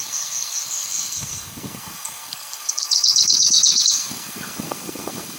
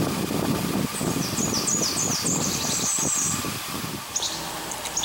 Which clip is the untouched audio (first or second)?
second